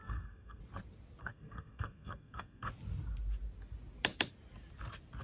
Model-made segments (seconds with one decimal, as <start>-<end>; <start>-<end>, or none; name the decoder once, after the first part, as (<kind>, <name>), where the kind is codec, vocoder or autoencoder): 0.0-0.6 (codec, SNAC); 1.2-2.7